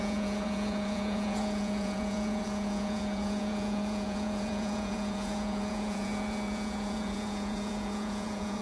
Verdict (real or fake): fake